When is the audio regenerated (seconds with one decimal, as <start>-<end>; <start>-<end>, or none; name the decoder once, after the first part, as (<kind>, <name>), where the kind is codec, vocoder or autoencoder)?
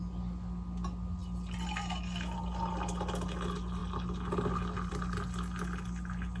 none